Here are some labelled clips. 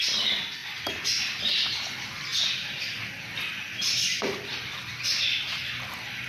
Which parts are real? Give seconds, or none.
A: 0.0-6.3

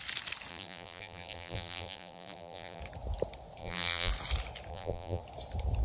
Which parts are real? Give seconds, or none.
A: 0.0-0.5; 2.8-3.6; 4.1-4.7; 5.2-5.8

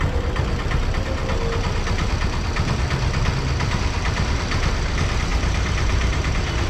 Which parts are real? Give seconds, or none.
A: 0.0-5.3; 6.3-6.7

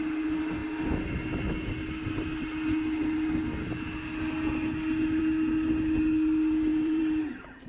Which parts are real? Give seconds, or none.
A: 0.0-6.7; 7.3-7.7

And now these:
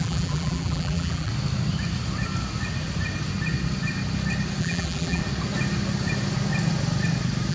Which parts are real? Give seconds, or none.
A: 1.3-4.6; 5.2-7.5